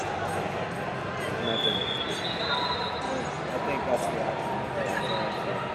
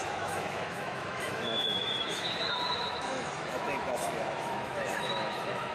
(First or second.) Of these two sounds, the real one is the first